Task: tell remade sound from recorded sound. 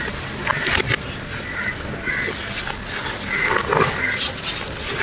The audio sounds recorded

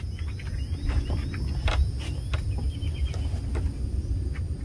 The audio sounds recorded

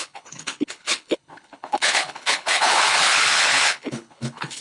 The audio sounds remade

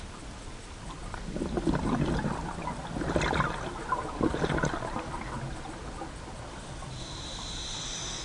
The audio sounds recorded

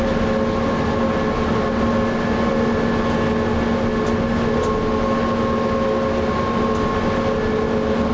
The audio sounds recorded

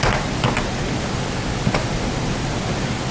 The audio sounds recorded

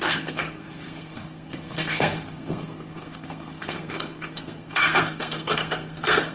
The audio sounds remade